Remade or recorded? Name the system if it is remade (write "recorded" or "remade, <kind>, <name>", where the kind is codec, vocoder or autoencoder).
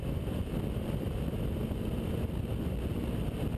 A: recorded